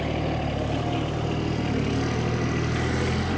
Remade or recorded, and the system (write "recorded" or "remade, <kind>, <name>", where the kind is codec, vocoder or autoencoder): recorded